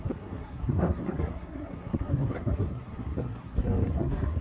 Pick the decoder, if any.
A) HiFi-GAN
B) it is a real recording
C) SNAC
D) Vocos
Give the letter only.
C